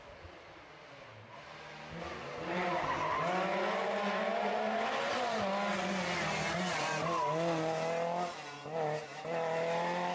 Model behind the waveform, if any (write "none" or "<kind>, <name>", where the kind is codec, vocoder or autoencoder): none